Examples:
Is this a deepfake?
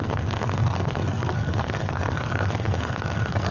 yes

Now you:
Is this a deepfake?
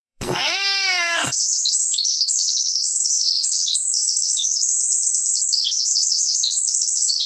yes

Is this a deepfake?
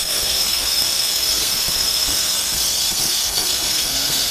yes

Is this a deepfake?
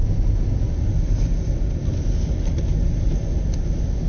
no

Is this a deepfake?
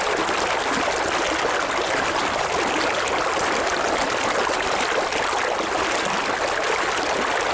no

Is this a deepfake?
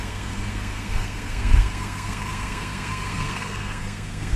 yes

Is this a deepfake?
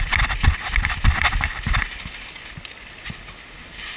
no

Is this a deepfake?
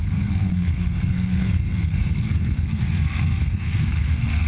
yes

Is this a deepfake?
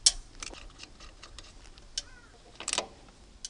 no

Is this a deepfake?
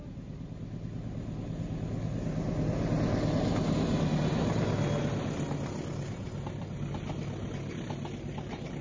no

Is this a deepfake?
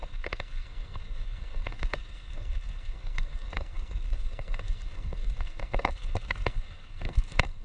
yes